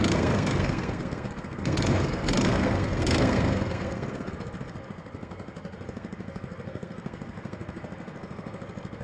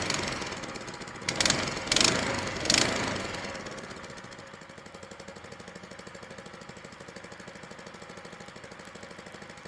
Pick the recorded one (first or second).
second